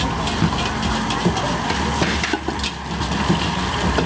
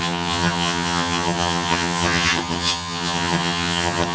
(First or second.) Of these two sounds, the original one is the first